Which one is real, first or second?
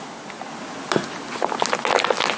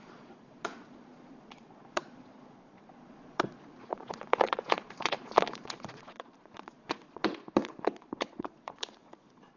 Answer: first